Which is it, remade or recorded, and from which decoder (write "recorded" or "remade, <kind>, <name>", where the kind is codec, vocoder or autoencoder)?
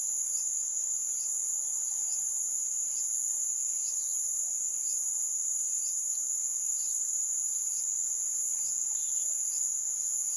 remade, vocoder, BigVGAN v2